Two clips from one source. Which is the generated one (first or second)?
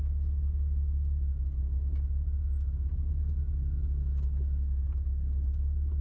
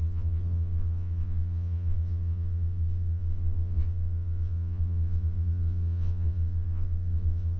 second